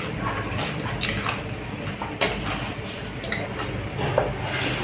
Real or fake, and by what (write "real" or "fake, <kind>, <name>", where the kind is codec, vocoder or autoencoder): real